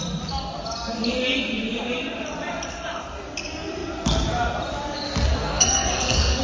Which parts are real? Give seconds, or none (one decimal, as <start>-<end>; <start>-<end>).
0.0-5.4